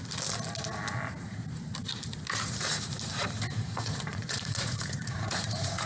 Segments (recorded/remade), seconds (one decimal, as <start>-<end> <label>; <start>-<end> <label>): 0.0-3.5 recorded; 3.5-5.9 remade